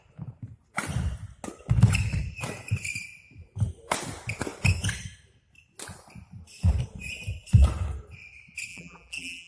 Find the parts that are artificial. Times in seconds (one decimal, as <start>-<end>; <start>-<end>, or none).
8.7-9.5